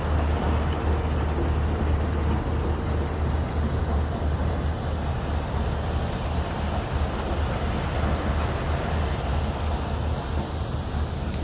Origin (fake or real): real